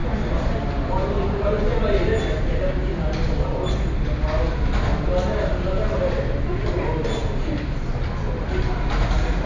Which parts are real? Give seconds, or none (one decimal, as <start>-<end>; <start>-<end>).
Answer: 0.0-9.5